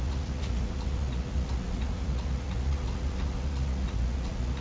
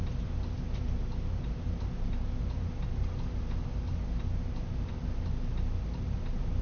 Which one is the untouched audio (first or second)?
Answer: second